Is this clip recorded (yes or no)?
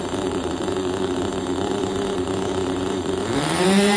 no